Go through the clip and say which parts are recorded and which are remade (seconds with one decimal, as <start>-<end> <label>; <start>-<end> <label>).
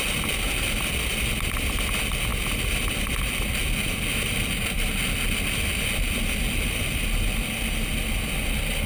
0.0-8.9 recorded